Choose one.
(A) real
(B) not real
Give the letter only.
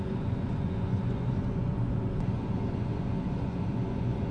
B